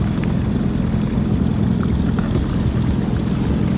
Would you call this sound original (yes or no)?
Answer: yes